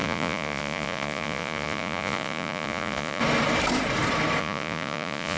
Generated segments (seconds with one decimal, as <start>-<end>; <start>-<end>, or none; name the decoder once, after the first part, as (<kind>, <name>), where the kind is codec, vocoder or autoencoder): 0.0-3.2 (vocoder, Vocos); 4.4-5.4